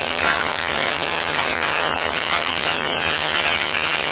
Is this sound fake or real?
fake